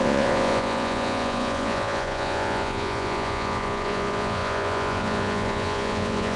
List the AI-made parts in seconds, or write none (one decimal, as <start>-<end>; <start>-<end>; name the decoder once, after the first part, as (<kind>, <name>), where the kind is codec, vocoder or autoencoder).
0.0-6.4 (vocoder, Vocos)